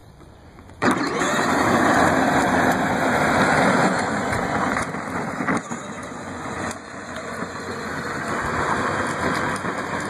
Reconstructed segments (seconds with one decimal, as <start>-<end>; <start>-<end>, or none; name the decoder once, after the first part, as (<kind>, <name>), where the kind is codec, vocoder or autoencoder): 0.0-0.9 (vocoder, Vocos); 3.8-4.9; 6.0-7.9